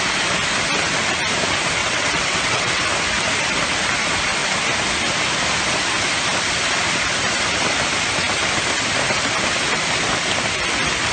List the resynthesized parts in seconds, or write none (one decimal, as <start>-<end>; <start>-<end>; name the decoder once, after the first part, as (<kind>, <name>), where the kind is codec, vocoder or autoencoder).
1.8-2.8 (vocoder, WaveNeXt)